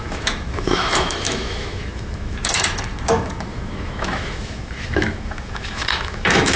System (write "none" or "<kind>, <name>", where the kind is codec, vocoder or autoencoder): autoencoder, DAC-VAE